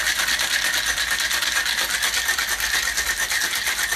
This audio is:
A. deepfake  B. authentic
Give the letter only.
B